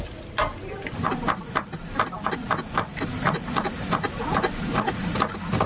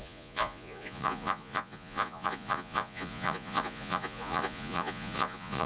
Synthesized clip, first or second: second